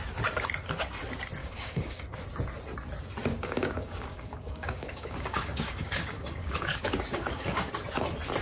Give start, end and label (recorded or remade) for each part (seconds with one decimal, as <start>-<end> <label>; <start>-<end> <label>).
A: 0.0-1.4 recorded; 1.4-2.0 remade; 2.0-3.3 recorded; 3.3-7.7 remade; 7.7-8.4 recorded